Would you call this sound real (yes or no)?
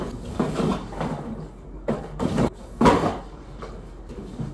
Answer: no